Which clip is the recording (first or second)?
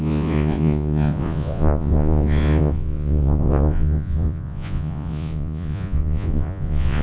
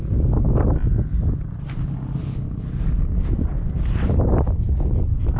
second